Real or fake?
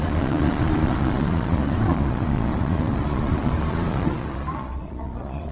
fake